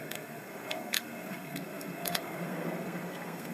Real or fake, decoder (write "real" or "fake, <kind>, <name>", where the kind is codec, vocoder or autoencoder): fake, codec, SNAC